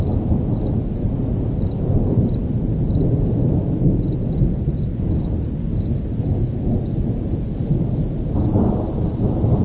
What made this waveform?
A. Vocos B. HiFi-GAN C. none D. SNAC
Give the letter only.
C